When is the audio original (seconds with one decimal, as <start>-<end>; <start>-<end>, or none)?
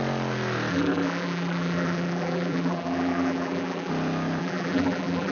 0.0-0.7; 3.9-4.4